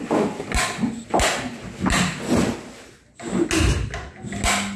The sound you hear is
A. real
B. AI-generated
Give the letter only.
A